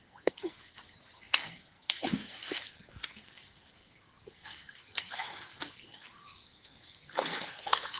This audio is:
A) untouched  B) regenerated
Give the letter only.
B